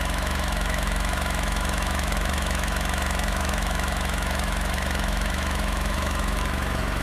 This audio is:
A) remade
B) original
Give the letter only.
A